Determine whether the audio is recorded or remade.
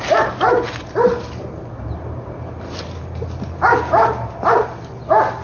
recorded